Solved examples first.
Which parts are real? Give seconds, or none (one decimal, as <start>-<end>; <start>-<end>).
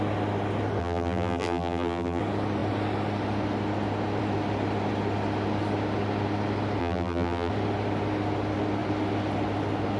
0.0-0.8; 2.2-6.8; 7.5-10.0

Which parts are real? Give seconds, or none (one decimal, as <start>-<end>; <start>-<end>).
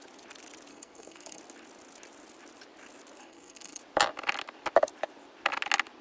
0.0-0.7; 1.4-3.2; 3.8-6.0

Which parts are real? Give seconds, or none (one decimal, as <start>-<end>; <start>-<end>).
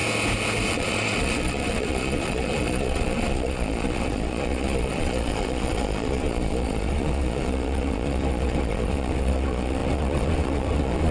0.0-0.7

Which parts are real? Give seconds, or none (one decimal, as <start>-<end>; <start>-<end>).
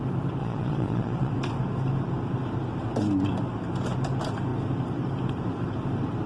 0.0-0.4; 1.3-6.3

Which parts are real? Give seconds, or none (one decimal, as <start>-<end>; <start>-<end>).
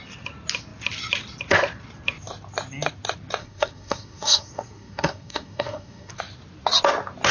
0.0-3.4; 6.1-7.3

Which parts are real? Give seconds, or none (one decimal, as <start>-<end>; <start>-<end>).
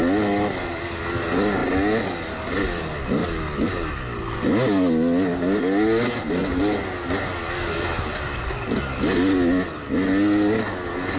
0.0-11.2